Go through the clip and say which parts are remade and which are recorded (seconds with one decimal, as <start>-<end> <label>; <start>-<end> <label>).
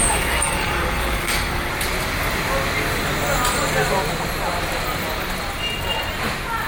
0.0-1.7 remade; 1.7-6.7 recorded